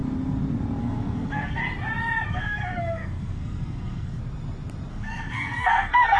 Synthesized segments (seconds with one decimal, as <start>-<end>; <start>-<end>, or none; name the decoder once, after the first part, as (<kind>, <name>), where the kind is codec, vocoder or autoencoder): 0.8-1.6 (codec, SNAC); 2.3-4.2; 4.9-6.2